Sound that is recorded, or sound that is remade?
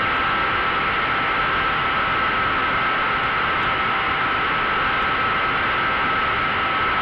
recorded